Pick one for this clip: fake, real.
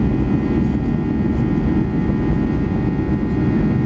real